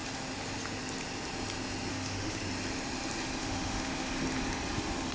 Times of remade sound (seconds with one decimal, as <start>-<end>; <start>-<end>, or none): 1.9-2.4; 3.4-4.1